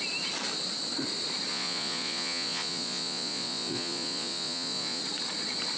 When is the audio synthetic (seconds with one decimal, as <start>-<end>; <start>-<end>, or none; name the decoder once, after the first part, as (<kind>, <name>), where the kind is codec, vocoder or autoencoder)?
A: 1.5-5.0 (vocoder, Vocos)